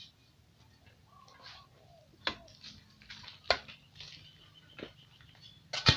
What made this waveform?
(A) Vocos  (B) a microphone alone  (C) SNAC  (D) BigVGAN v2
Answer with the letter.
B